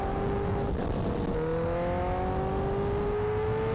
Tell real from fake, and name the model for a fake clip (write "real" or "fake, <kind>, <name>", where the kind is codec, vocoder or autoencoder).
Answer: real